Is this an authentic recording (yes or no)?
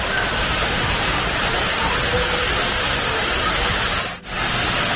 yes